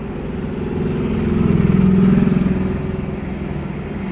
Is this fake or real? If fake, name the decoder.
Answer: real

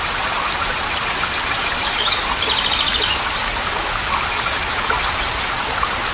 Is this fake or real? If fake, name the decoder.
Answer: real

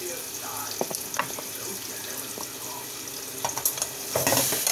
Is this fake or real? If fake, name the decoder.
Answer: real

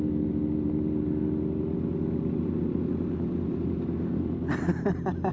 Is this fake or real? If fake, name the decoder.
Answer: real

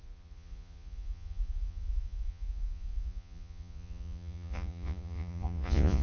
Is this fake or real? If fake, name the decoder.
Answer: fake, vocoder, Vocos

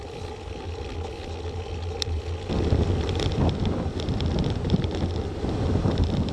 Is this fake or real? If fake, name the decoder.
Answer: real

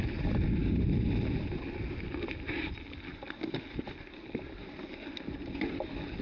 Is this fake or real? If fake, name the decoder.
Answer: real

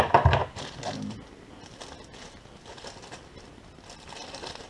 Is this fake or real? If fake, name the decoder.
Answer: real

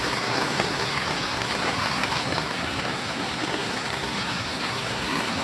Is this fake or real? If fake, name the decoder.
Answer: fake, codec, SNAC